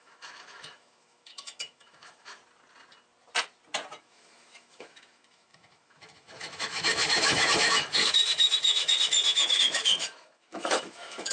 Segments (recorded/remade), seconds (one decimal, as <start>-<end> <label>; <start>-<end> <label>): 0.0-2.4 remade; 2.4-4.0 recorded; 4.0-11.3 remade